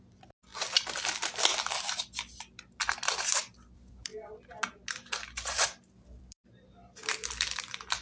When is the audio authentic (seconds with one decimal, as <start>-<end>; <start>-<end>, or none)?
0.5-1.7; 4.1-5.5